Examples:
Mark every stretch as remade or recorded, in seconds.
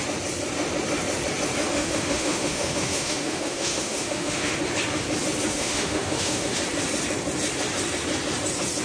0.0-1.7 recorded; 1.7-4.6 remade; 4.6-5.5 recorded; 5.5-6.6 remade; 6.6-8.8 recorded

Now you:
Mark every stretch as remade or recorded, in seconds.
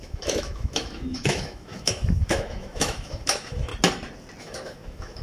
0.0-3.7 remade; 3.7-4.4 recorded; 4.4-5.2 remade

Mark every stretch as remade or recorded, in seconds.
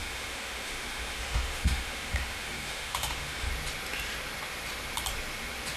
0.0-3.5 remade; 3.5-5.8 recorded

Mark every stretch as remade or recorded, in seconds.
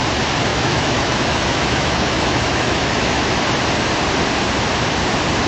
0.0-0.5 recorded; 0.5-3.4 remade; 3.4-5.5 recorded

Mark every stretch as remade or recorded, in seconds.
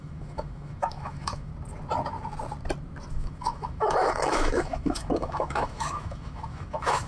0.0-1.5 remade; 1.5-3.1 recorded; 3.1-7.1 remade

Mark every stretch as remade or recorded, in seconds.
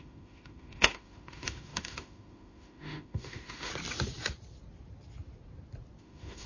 0.0-3.7 remade; 3.7-6.0 recorded; 6.0-6.5 remade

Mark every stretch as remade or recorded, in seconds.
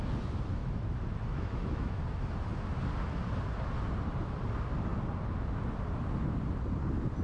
0.0-0.6 recorded; 0.6-2.0 remade; 2.0-7.2 recorded